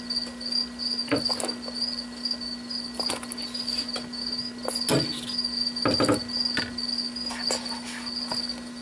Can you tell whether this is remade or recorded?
recorded